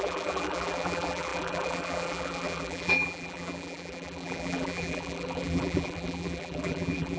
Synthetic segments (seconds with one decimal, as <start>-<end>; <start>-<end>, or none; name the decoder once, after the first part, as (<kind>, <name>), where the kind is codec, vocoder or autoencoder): 0.0-7.2 (vocoder, BigVGAN v2)